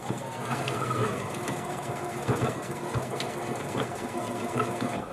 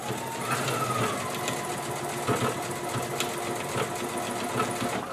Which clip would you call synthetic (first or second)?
first